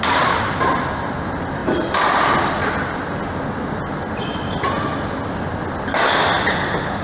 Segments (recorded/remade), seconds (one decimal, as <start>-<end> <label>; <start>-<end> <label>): 0.0-7.0 recorded